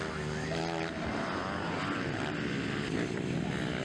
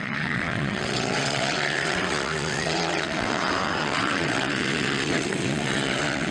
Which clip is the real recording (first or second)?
first